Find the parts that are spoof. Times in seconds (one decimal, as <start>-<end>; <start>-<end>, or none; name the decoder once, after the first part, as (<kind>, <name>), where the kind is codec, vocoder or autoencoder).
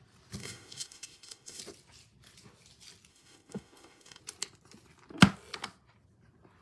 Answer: 0.4-1.6 (autoencoder, DAC-VAE); 3.1-4.2